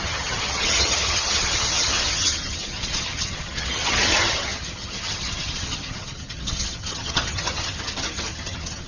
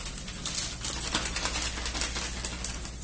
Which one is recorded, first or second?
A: second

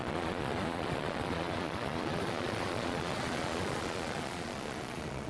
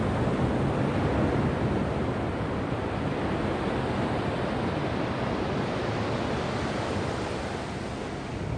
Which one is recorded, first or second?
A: second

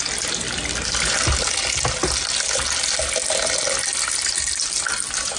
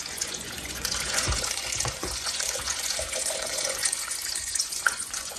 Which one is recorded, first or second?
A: first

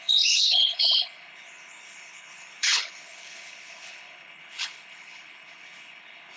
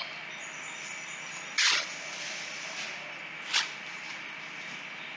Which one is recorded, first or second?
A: second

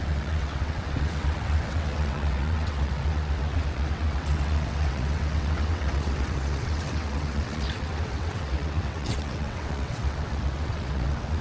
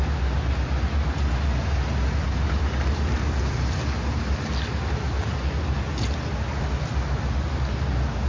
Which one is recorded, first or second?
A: second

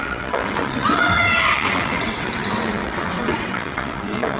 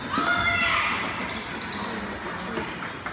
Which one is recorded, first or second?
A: second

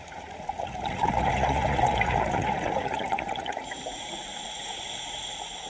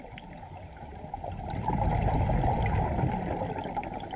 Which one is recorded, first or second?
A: second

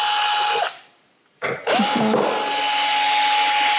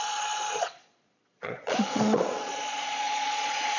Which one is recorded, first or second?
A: first